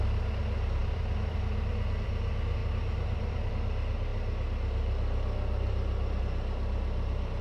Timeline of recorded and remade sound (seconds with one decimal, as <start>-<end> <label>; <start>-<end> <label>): 0.0-0.8 recorded; 0.8-2.1 remade; 2.1-2.6 recorded; 2.6-3.5 remade; 3.5-7.4 recorded

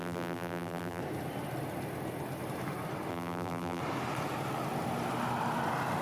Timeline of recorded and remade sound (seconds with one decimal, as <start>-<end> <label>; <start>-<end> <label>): 0.0-1.0 remade; 1.0-3.1 recorded; 3.1-3.8 remade; 3.8-6.0 recorded

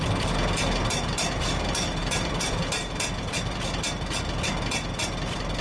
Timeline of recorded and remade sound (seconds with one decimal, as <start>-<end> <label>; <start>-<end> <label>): 0.0-2.0 recorded; 2.0-3.8 remade; 3.8-5.6 recorded

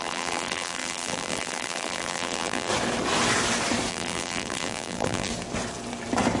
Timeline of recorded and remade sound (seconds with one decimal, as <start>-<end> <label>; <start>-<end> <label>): 0.0-2.7 remade; 2.7-3.9 recorded; 3.9-5.3 remade; 5.3-6.4 recorded

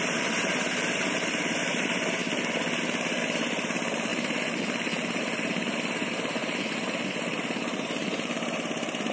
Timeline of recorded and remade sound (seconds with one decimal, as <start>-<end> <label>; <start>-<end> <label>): 0.0-2.2 remade; 2.2-2.8 recorded; 2.8-9.1 remade

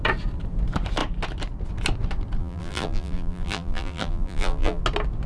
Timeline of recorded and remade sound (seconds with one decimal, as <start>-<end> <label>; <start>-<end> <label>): 0.0-2.4 recorded; 2.4-4.8 remade; 4.8-5.3 recorded

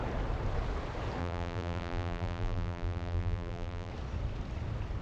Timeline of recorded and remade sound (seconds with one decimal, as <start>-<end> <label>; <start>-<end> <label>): 0.0-1.2 recorded; 1.2-3.9 remade; 3.9-5.0 recorded